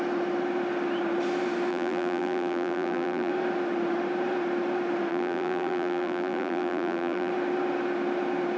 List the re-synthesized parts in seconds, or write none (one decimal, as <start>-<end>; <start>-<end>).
1.7-3.3; 5.1-7.3